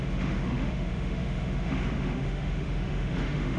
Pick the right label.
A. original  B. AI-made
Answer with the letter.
B